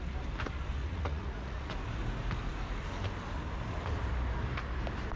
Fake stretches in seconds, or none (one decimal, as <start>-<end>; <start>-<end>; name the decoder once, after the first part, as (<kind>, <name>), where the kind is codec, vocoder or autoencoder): 0.8-1.7 (vocoder, Vocos)